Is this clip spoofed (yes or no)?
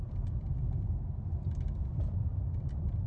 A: no